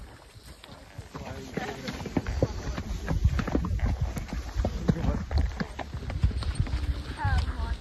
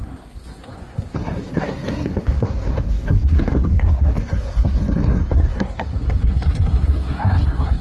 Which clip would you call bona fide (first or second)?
first